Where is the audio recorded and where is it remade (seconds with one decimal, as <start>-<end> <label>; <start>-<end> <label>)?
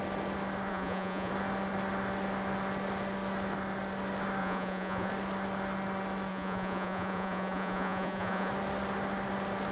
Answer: 0.0-0.7 recorded; 0.7-1.3 remade; 1.3-4.4 recorded; 4.4-5.1 remade; 5.1-6.3 recorded; 6.3-8.5 remade; 8.5-9.7 recorded